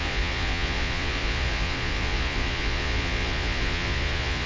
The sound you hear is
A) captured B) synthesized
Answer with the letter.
B